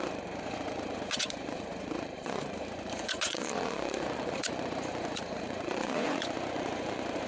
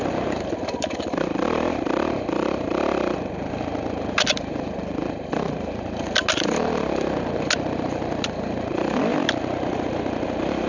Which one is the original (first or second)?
second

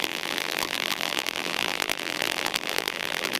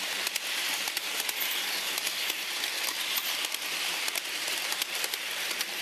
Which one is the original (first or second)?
second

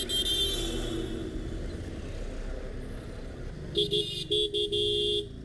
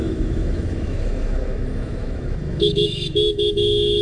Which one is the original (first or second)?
first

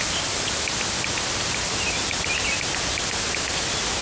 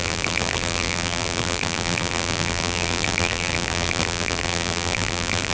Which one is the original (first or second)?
first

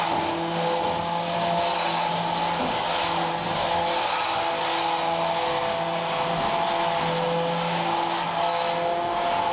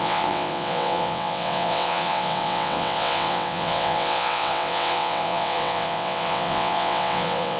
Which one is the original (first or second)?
first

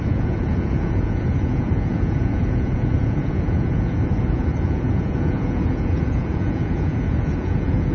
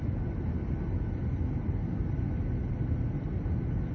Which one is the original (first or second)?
second